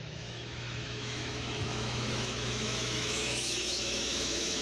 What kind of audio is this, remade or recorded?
remade